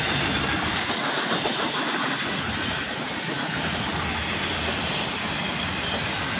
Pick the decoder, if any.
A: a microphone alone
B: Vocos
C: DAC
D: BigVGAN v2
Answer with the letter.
A